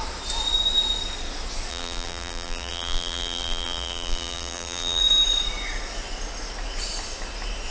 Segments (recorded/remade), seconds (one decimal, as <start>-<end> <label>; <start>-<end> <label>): 0.0-1.7 recorded; 1.7-5.0 remade; 5.0-7.7 recorded